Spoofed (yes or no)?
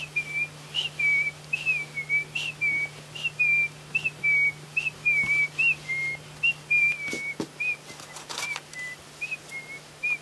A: no